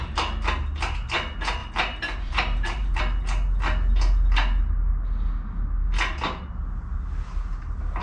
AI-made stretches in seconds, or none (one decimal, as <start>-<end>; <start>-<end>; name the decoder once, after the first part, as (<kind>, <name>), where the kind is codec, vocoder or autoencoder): 1.6-3.0 (vocoder, BigVGAN v2)